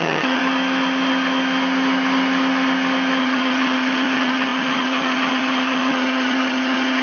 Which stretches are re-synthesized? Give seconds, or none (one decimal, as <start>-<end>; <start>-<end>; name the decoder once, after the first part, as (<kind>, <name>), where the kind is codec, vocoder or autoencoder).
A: 0.0-0.4 (vocoder, HiFi-GAN); 3.2-7.0